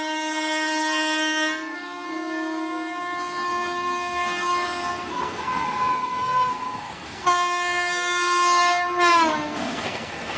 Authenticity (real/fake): fake